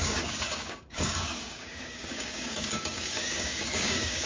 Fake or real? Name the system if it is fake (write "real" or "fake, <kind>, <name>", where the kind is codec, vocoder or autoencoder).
fake, codec, DAC